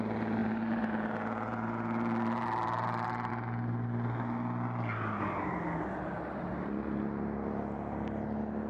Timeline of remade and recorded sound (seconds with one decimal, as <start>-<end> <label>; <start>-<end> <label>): 0.0-0.4 recorded; 0.4-3.3 remade; 3.3-8.7 recorded